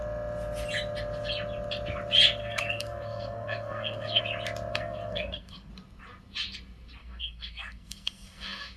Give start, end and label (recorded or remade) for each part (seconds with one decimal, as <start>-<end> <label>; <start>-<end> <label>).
0.0-2.4 recorded; 2.4-4.2 remade; 4.2-4.7 recorded; 4.7-5.7 remade; 5.7-7.0 recorded; 7.0-8.8 remade